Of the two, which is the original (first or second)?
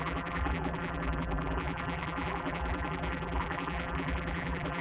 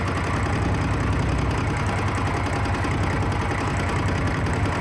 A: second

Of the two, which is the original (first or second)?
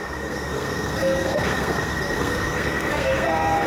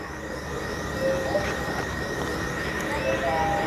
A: second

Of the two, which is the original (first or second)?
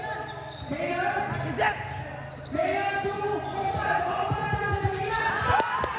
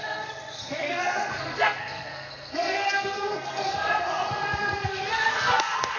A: first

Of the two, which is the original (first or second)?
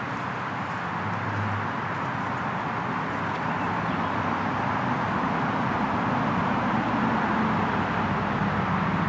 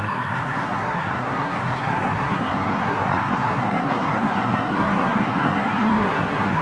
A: first